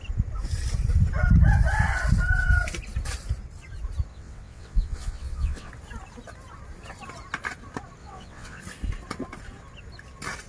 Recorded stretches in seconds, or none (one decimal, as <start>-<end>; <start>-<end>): 0.0-4.1; 5.7-8.0; 8.6-10.5